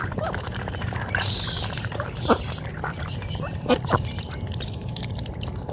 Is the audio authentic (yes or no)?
no